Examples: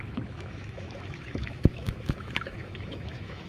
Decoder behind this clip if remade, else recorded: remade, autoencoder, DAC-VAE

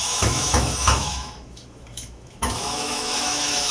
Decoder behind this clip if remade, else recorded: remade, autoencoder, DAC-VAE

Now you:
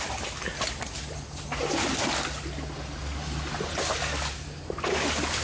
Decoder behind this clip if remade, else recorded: recorded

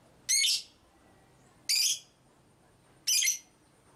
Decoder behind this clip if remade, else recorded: recorded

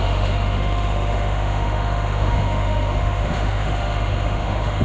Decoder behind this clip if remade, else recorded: remade, autoencoder, DAC-VAE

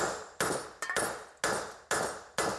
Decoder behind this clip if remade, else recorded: recorded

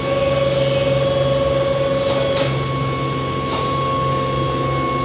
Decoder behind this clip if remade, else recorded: recorded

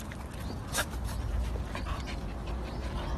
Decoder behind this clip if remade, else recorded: recorded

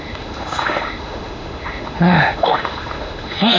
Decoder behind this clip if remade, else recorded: remade, autoencoder, DAC-VAE